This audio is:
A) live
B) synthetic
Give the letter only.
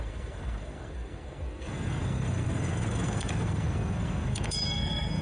B